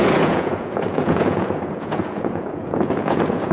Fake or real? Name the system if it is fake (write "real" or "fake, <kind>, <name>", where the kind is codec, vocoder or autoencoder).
fake, vocoder, Vocos